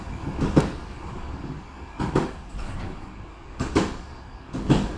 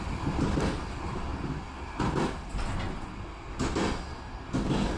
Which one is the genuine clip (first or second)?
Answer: second